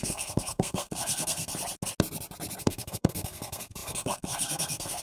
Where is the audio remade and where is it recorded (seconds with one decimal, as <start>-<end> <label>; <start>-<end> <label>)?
0.0-1.5 remade; 1.5-2.6 recorded; 2.6-5.0 remade

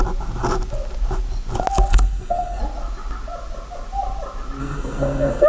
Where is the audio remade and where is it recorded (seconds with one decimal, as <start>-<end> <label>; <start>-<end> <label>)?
0.0-1.9 recorded; 1.9-2.6 remade; 2.6-4.6 recorded; 4.6-5.5 remade